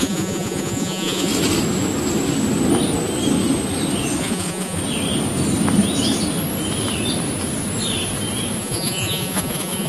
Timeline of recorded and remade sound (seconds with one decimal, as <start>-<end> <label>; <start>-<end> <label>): 0.0-1.3 remade; 1.3-4.2 recorded; 4.2-4.8 remade; 4.8-8.6 recorded; 8.6-9.9 remade